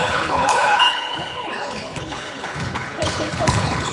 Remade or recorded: remade